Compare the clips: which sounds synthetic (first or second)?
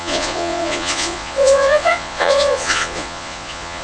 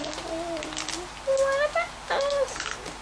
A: first